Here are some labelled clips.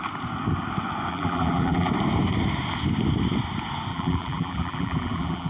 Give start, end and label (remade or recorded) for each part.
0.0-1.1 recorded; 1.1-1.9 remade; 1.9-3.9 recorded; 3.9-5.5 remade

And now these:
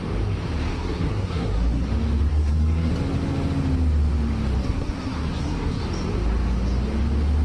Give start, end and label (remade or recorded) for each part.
0.0-0.7 recorded; 0.7-1.9 remade; 1.9-2.3 recorded; 2.3-2.9 remade; 2.9-4.6 recorded; 4.6-5.8 remade; 5.8-7.4 recorded

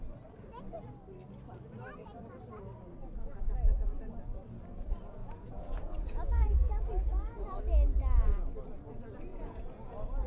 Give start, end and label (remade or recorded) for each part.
0.0-5.2 recorded; 5.2-7.6 remade; 7.6-9.3 recorded; 9.3-9.9 remade; 9.9-10.3 recorded

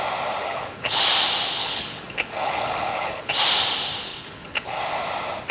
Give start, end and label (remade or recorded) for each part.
0.0-0.4 recorded; 0.4-1.0 remade; 1.0-1.6 recorded; 1.6-3.3 remade; 3.3-4.1 recorded; 4.1-4.8 remade; 4.8-5.5 recorded

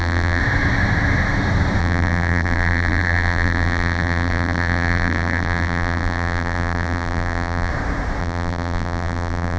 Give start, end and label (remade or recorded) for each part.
0.0-0.4 remade; 0.4-1.8 recorded; 1.8-7.7 remade; 7.7-8.2 recorded; 8.2-9.6 remade

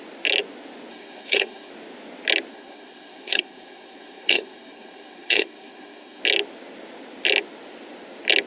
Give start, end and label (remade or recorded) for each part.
0.0-0.9 recorded; 0.9-1.7 remade; 1.7-2.5 recorded; 2.5-6.2 remade; 6.2-8.5 recorded